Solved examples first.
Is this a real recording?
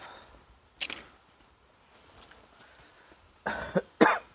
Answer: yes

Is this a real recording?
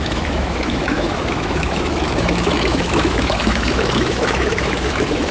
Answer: no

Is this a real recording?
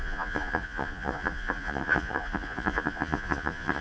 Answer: no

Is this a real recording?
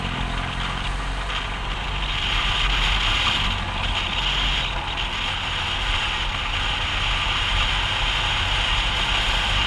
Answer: yes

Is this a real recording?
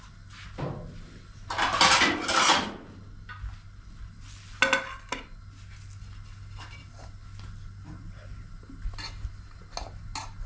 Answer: yes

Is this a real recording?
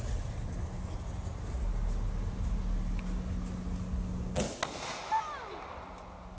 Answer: yes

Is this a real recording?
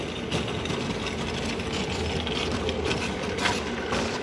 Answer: yes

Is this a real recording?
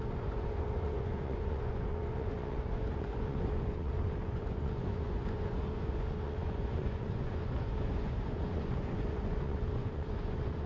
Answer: no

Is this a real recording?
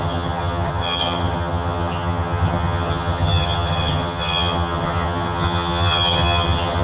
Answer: no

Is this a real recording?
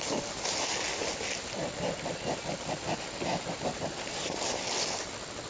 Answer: yes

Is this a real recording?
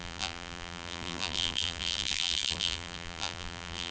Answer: no